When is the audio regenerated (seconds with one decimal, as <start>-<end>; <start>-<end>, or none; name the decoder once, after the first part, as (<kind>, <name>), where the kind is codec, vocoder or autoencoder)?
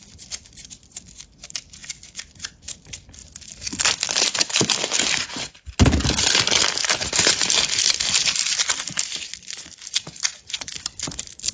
none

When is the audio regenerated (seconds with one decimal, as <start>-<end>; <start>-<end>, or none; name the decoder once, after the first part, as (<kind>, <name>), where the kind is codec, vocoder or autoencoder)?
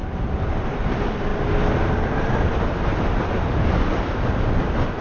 none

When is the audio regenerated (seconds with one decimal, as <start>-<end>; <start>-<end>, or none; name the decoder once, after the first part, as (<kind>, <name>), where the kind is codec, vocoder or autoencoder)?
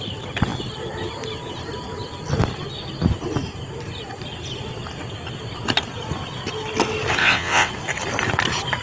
7.2-7.7 (vocoder, WaveNeXt)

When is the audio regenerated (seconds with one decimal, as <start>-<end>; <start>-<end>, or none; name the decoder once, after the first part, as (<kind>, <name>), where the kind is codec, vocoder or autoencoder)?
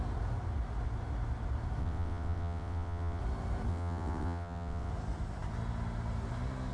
1.8-3.2 (vocoder, WaveNeXt); 3.7-4.9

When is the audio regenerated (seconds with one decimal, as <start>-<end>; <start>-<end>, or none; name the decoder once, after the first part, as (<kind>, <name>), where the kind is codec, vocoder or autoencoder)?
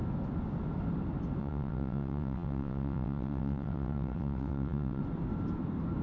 1.4-5.0 (vocoder, WaveNeXt)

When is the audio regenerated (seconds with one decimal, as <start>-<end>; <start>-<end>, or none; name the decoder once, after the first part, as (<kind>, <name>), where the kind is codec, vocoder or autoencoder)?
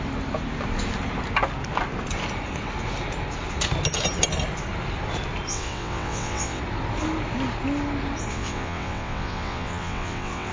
5.5-6.6 (vocoder, WaveNeXt); 8.3-10.5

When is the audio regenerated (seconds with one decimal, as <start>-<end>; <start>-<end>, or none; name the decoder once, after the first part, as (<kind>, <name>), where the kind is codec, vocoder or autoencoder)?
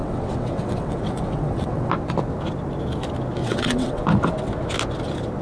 0.0-1.9 (vocoder, WaveNeXt); 3.4-4.0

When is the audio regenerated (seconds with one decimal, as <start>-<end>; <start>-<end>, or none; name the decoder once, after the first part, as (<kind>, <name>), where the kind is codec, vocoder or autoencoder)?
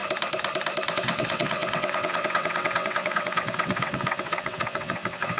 0.9-5.4 (vocoder, WaveNeXt)